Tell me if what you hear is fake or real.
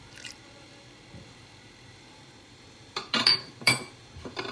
fake